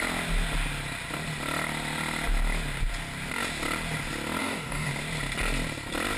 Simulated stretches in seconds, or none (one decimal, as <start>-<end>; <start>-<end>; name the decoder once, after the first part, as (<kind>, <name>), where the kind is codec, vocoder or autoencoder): 4.4-4.9 (codec, DAC)